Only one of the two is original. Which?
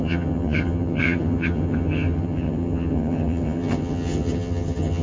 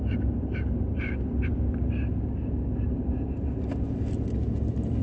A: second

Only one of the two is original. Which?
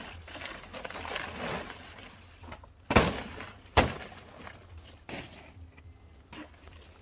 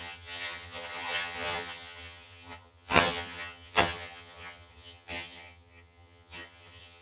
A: first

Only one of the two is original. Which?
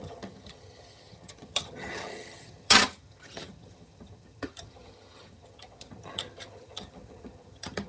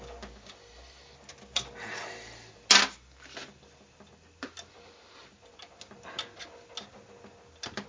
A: second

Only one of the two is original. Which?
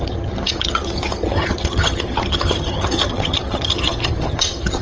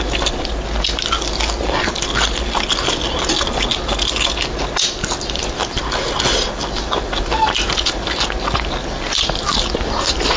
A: second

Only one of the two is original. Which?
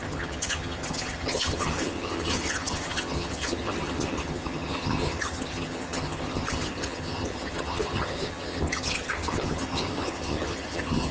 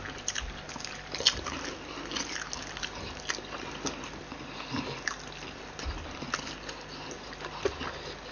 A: second